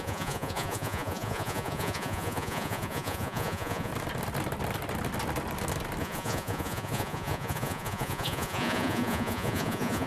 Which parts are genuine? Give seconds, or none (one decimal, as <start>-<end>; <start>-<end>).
3.9-6.0